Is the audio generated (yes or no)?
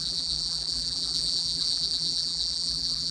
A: yes